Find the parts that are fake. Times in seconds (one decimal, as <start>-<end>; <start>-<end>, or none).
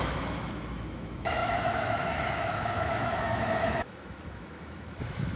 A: 0.0-5.4